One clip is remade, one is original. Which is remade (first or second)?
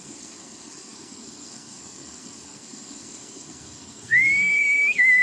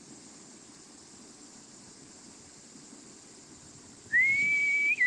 first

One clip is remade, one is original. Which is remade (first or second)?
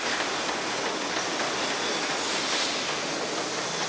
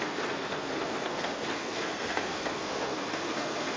second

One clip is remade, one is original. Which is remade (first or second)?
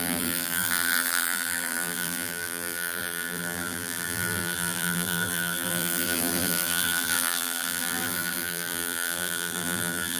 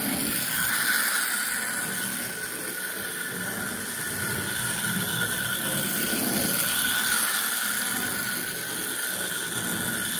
first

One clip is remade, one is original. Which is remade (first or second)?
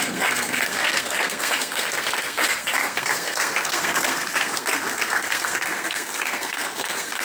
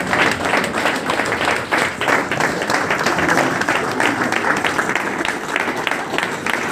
first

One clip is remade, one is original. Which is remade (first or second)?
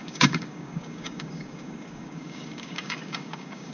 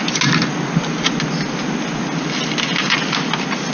first